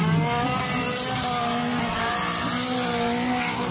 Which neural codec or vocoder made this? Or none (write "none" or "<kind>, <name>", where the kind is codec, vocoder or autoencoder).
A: none